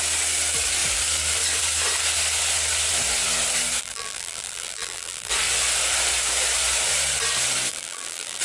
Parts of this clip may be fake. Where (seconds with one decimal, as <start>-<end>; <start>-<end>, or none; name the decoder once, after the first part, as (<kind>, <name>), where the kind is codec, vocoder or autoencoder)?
3.8-5.3 (vocoder, BigVGAN v2); 7.7-8.4